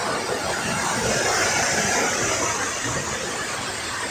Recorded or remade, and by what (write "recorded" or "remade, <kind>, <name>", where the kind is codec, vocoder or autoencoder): recorded